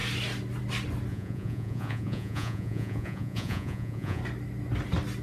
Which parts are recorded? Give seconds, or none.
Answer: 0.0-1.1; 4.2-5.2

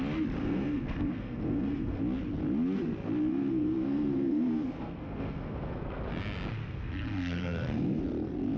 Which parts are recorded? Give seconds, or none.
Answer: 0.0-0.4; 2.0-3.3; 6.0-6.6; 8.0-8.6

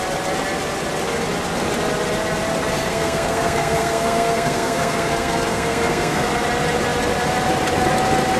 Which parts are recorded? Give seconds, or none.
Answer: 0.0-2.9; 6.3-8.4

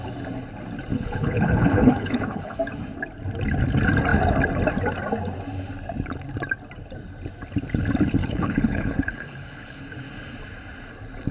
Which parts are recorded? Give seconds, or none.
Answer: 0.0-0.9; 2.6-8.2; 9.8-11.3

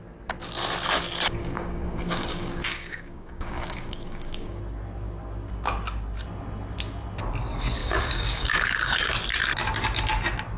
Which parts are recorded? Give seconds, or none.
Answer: 0.0-1.4; 4.6-7.8; 9.1-10.6

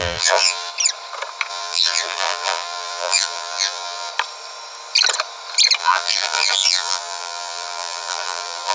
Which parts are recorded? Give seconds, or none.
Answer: 0.7-1.5; 4.1-5.8

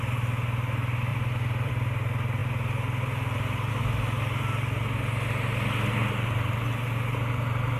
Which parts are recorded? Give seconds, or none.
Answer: 0.0-1.1; 1.7-7.8

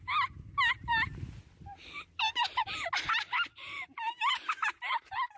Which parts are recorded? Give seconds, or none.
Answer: 0.0-5.4